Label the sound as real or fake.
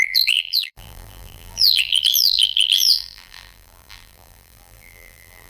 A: fake